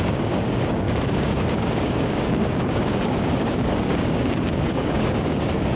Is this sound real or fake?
fake